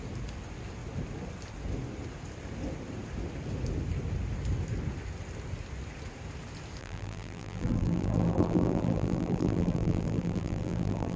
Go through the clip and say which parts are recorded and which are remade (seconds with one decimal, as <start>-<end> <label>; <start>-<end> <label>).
0.0-6.8 recorded; 6.8-11.2 remade